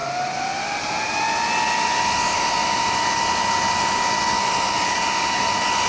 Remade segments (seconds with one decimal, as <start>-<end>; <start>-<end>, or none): none